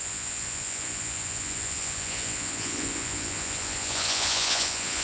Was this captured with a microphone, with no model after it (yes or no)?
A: no